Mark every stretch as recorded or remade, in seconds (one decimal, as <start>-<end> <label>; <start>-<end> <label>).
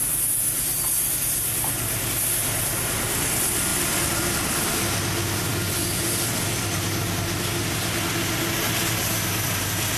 0.0-10.0 recorded